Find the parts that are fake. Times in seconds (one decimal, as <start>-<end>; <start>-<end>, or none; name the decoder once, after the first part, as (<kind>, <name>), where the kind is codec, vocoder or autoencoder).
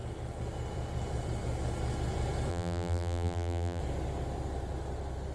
2.5-3.8 (vocoder, BigVGAN v2)